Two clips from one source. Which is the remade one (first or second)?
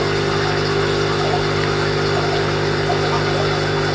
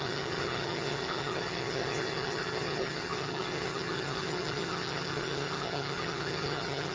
second